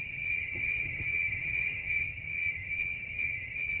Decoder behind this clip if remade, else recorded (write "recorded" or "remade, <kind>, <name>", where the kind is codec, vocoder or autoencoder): remade, vocoder, HiFi-GAN